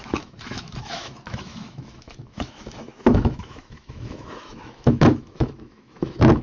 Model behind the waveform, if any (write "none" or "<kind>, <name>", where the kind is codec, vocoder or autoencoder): autoencoder, DAC-VAE